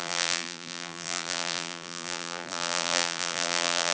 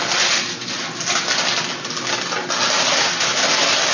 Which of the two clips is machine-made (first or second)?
first